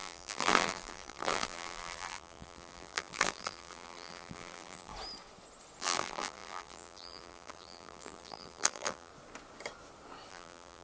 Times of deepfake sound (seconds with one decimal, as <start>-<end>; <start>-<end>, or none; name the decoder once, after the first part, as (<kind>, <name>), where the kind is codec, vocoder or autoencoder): 0.0-4.9 (vocoder, BigVGAN v2); 5.8-9.1; 10.3-10.8